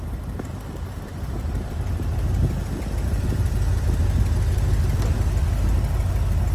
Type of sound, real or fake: fake